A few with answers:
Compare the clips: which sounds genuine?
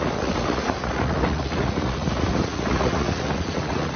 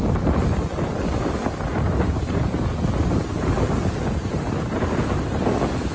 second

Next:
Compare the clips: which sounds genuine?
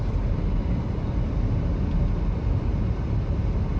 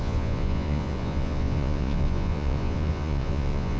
first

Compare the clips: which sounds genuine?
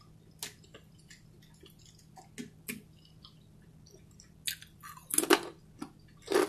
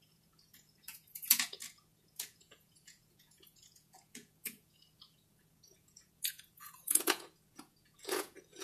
first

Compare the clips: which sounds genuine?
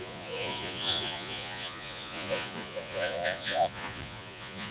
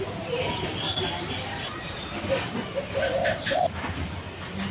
second